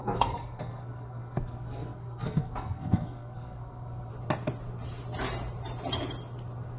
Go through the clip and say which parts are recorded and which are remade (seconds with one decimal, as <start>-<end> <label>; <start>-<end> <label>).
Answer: 0.0-4.1 remade; 4.1-6.8 recorded

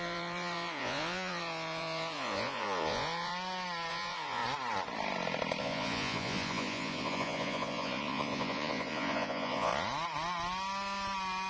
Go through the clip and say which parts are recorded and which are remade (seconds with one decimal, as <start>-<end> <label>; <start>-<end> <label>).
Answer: 0.0-3.3 remade; 3.3-3.9 recorded; 3.9-4.4 remade; 4.4-5.6 recorded; 5.6-9.7 remade; 9.7-11.5 recorded

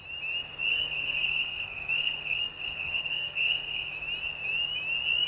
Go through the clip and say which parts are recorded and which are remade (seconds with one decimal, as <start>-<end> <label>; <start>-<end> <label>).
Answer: 0.0-0.7 recorded; 0.7-3.9 remade; 3.9-5.3 recorded

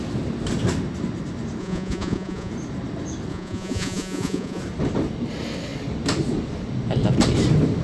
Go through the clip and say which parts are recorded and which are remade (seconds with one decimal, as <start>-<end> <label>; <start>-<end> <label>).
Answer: 0.0-1.6 recorded; 1.6-2.5 remade; 2.5-3.3 recorded; 3.3-4.6 remade; 4.6-7.8 recorded